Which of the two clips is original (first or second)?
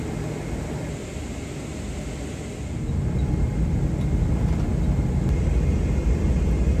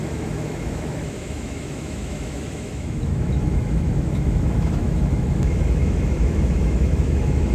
first